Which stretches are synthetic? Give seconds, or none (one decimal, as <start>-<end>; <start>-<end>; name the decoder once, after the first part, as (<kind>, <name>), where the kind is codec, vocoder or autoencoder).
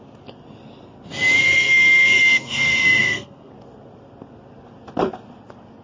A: 1.4-3.5 (codec, SNAC)